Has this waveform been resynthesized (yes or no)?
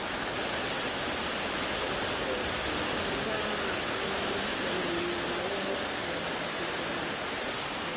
no